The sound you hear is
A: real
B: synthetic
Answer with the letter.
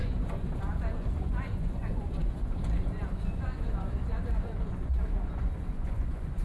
B